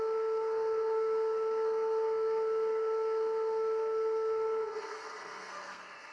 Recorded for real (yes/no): no